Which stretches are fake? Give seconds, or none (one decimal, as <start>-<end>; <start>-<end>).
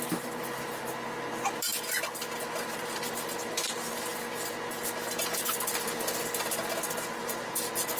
7.2-8.0